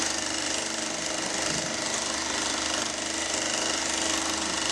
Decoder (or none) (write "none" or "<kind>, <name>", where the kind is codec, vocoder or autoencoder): none